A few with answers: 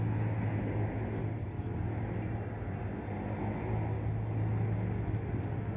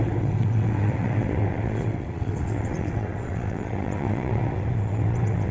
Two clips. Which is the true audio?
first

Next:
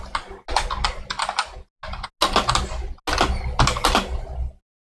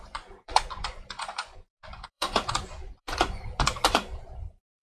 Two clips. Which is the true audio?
first